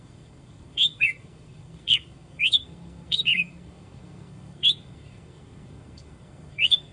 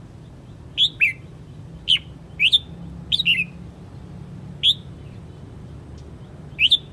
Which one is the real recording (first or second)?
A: second